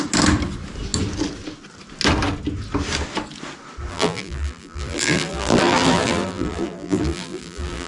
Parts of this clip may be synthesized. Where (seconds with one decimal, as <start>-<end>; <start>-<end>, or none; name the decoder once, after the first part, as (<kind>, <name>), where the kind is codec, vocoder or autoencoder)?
3.9-7.9 (vocoder, BigVGAN v2)